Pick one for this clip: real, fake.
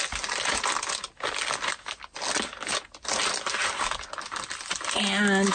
real